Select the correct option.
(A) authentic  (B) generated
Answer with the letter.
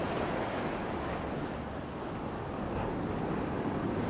A